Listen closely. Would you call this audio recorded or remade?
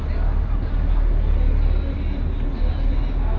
recorded